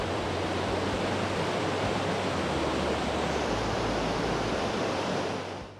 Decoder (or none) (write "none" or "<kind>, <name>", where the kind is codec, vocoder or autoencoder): vocoder, BigVGAN v2